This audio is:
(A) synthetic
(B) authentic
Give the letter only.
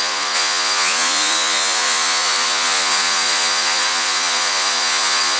A